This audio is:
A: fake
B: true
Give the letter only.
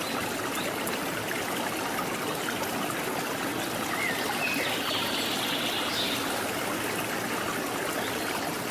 B